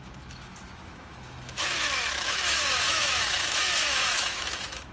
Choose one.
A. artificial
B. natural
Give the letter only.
A